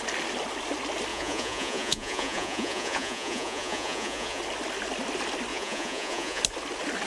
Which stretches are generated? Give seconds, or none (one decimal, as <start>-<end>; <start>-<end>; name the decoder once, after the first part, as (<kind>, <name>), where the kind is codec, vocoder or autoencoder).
1.1-4.4 (vocoder, Vocos); 5.5-6.4